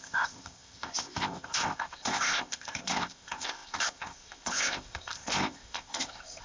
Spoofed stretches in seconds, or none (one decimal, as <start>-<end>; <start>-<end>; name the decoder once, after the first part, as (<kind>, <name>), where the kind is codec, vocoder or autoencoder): 0.0-6.4 (codec, ZipCodec)